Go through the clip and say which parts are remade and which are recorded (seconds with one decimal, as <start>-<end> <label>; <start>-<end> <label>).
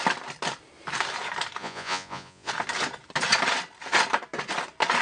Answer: 0.0-1.6 recorded; 1.6-2.5 remade; 2.5-5.0 recorded